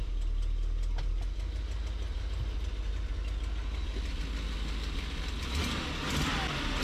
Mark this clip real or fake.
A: real